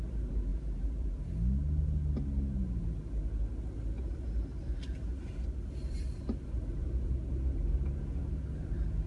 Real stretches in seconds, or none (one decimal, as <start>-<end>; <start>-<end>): 0.0-9.1